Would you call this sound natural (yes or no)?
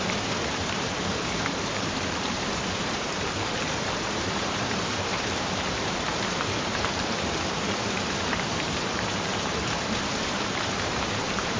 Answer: no